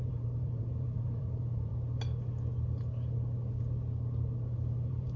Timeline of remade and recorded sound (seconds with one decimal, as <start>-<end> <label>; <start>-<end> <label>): 0.0-1.7 remade; 1.7-4.8 recorded; 4.8-5.2 remade